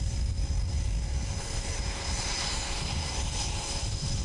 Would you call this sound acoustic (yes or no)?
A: yes